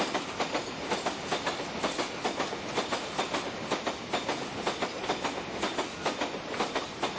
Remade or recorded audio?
recorded